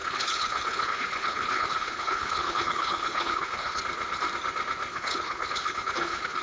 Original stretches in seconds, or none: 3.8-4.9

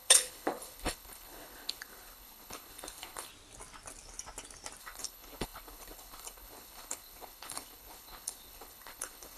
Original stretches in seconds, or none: 3.3-4.8

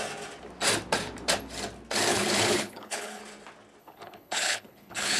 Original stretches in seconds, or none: 0.0-2.1; 3.2-3.8

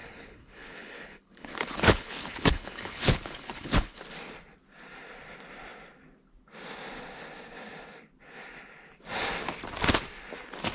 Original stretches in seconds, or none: 4.0-10.7

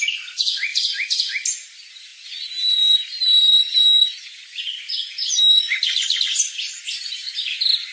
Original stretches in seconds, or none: 0.0-7.9

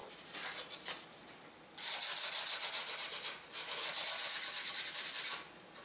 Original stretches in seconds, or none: 0.0-5.8